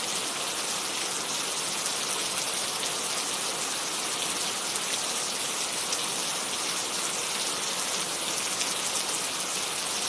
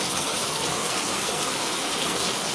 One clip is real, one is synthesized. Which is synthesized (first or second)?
second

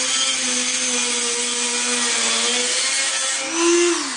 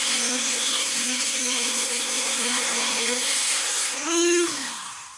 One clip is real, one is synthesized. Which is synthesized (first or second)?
second